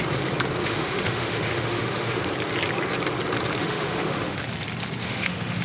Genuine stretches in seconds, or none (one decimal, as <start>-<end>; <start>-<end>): 0.0-0.6; 2.2-3.6; 4.4-5.0